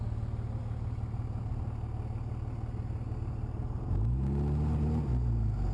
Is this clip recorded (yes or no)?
yes